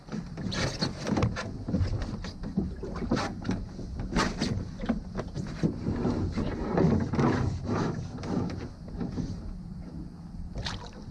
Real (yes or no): yes